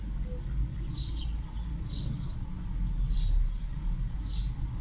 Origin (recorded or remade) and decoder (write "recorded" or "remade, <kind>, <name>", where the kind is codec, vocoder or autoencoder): recorded